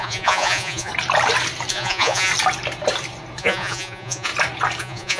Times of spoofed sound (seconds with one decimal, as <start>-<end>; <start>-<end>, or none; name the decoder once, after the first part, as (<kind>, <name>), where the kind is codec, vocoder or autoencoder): 0.0-0.9 (vocoder, Vocos); 1.7-2.3; 3.4-4.3; 4.8-5.2